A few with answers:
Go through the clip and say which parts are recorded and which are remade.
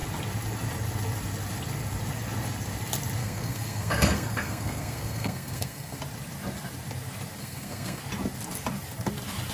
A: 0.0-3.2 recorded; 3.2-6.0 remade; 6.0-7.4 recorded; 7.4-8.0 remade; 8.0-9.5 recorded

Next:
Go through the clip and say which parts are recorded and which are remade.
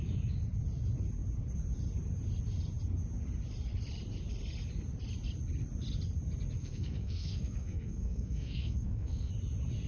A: 0.0-6.6 recorded; 6.6-9.3 remade; 9.3-9.9 recorded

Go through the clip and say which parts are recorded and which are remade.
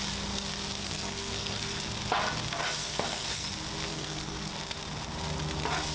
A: 0.0-0.8 recorded; 0.8-1.8 remade; 1.8-2.8 recorded; 2.8-3.5 remade; 3.5-3.9 recorded; 3.9-4.5 remade; 4.5-5.9 recorded